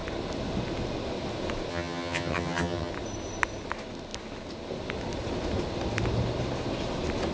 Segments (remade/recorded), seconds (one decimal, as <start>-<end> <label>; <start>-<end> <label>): 0.0-1.7 recorded; 1.7-2.9 remade; 2.9-7.3 recorded